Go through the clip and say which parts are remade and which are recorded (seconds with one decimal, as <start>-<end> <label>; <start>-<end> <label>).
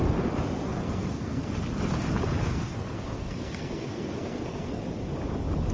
0.0-0.7 recorded; 0.7-1.5 remade; 1.5-2.4 recorded; 2.4-4.8 remade; 4.8-5.7 recorded